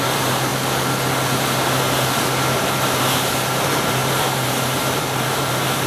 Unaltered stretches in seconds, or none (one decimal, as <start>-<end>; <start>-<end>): 0.5-3.0